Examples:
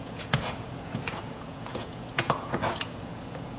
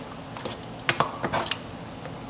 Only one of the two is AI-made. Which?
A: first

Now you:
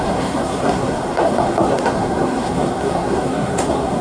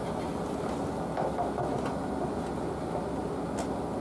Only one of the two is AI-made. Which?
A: first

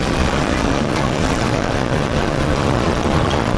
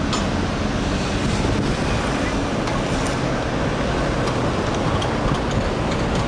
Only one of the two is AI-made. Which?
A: first